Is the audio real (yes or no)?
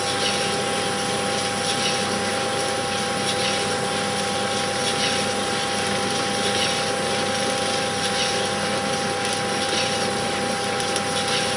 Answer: yes